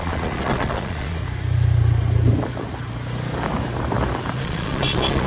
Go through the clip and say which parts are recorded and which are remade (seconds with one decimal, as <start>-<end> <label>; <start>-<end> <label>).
0.0-1.2 remade; 1.2-4.4 recorded; 4.4-5.3 remade